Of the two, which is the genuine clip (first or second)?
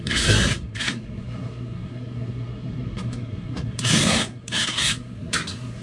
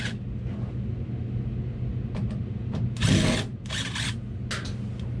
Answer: second